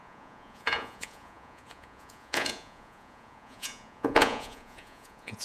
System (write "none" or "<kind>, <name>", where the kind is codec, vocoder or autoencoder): vocoder, Vocos